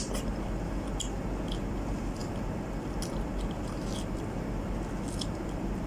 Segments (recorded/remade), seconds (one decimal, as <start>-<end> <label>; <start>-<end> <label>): 0.0-5.9 recorded